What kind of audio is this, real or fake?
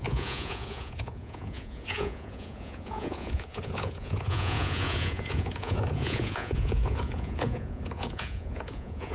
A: fake